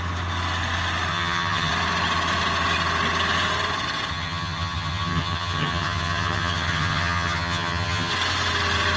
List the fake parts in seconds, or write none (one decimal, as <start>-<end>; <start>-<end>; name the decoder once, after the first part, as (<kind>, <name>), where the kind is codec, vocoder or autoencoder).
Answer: 1.1-1.7 (vocoder, HiFi-GAN); 4.1-8.1